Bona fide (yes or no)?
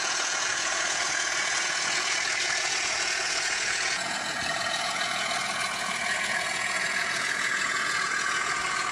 no